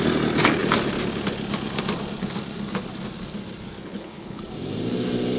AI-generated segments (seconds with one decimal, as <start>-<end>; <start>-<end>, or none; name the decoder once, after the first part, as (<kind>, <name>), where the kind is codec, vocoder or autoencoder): 3.8-4.4 (codec, HILCodec)

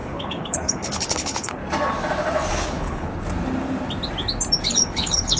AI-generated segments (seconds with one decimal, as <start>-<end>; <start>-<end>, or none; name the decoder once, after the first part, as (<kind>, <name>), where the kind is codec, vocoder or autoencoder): 0.0-1.6 (codec, HILCodec); 2.5-3.1; 4.7-5.4

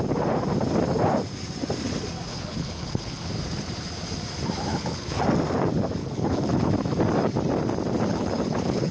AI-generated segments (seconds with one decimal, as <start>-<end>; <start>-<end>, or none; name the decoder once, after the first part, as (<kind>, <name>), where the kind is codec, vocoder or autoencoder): 2.3-3.3 (codec, HILCodec); 4.7-5.2; 6.0-6.7; 8.1-8.9

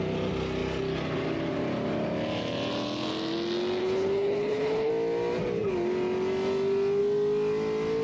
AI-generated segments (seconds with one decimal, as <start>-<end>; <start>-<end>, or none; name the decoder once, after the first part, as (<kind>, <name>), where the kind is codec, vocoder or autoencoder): 3.8-4.9 (codec, HILCodec)